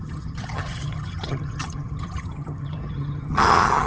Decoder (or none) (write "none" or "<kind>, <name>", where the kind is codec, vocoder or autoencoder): vocoder, HiFi-GAN